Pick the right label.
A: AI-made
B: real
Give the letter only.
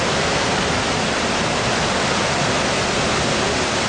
B